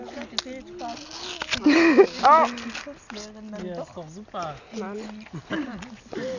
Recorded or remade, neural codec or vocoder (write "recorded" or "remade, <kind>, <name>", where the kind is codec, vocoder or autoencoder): recorded